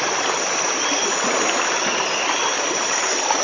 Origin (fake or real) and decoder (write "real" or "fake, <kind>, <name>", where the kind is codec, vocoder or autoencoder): real